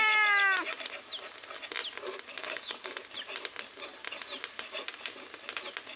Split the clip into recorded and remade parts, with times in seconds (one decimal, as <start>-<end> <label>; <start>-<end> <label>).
0.0-2.3 recorded; 2.3-2.9 remade; 2.9-6.0 recorded